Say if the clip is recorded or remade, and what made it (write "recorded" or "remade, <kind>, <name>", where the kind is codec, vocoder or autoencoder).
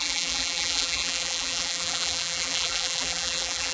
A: remade, vocoder, BigVGAN v2